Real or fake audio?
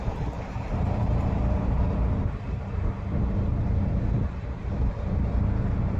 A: fake